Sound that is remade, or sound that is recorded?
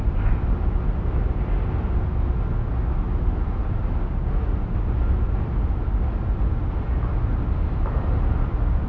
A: recorded